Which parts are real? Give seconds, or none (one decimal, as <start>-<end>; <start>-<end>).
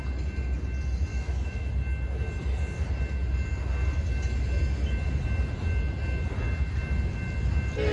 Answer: 0.0-1.1; 1.7-7.9